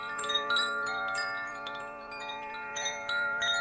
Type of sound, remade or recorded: remade